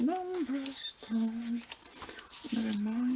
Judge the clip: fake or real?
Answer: real